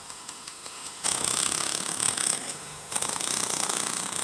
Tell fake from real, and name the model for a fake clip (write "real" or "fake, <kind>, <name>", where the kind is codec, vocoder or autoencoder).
fake, autoencoder, DAC-VAE